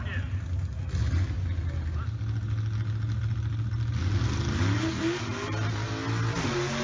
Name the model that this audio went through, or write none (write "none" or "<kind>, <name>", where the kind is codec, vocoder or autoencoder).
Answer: none